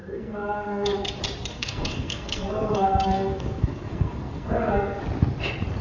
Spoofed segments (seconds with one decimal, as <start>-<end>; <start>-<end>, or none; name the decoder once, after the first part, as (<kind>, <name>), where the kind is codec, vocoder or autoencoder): 0.0-1.1 (codec, SNAC); 1.5-5.0